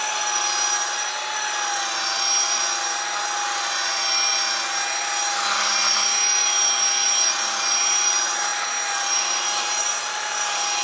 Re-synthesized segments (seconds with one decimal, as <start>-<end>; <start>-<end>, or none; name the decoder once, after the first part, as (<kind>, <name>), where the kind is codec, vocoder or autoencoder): none